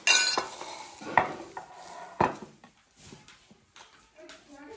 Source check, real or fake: real